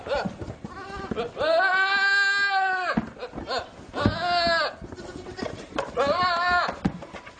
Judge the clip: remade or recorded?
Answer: recorded